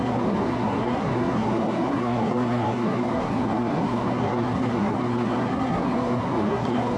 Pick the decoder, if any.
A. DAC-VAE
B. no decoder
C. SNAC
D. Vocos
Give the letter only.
C